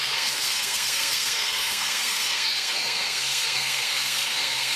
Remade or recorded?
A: remade